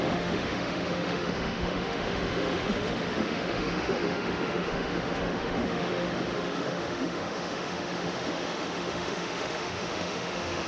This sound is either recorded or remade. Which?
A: remade